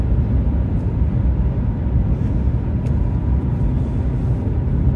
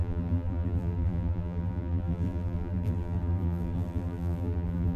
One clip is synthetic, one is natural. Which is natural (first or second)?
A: first